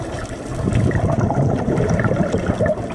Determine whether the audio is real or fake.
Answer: fake